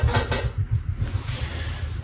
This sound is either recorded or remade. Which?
recorded